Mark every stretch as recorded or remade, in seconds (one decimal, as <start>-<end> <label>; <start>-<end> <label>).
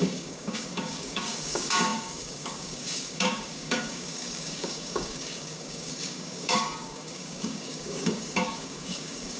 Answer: 0.0-9.4 remade